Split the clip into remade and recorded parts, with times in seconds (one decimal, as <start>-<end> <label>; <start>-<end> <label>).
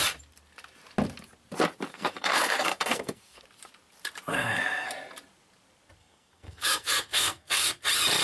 0.0-1.9 recorded; 1.9-3.4 remade; 3.4-4.3 recorded; 4.3-4.9 remade; 4.9-6.0 recorded; 6.0-7.7 remade; 7.7-8.2 recorded